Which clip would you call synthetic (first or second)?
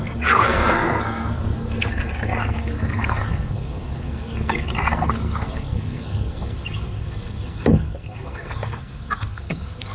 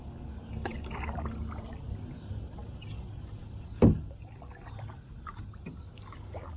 first